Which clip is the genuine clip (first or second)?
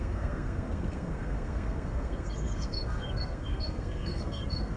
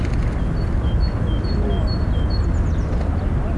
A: second